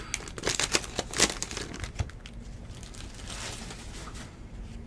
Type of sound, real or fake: real